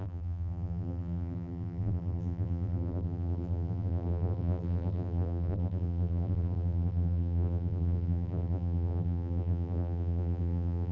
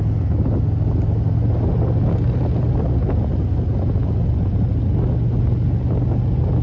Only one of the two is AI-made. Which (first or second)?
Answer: first